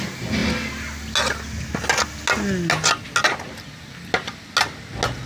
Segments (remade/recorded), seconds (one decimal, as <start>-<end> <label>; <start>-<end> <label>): 0.0-5.3 recorded